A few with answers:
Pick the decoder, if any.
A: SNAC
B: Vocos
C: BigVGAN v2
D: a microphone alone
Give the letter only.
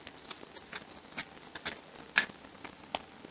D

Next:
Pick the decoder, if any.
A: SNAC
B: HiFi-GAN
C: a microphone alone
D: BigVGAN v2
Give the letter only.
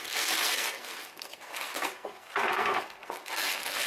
A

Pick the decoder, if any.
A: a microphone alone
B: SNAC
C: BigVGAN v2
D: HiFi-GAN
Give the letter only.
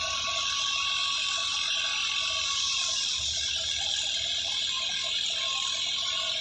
A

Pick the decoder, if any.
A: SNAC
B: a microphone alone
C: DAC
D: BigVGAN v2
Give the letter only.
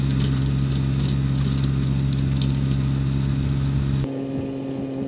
B